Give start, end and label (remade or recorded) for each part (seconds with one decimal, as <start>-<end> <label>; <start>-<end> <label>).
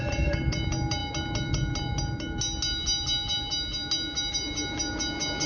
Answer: 0.0-5.5 recorded